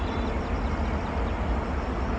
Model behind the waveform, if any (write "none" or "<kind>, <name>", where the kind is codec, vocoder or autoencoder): none